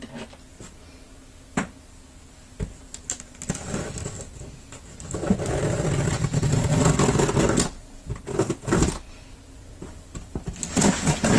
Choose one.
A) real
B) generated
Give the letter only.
A